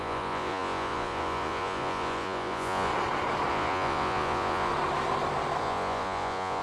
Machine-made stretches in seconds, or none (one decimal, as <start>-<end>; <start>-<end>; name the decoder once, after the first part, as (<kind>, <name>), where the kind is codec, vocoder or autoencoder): 0.0-2.9 (vocoder, Vocos); 3.5-4.7; 5.6-6.6